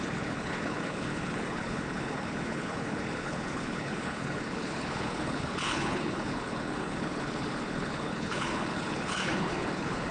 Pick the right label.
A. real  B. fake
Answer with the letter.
B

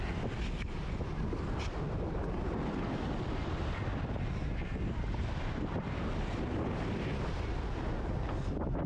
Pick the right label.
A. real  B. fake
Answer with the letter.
A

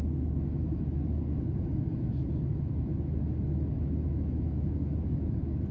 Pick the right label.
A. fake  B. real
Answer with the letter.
A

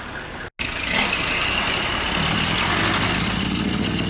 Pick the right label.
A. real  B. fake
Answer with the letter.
A